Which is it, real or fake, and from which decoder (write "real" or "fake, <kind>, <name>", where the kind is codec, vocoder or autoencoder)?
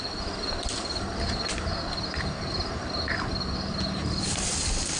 real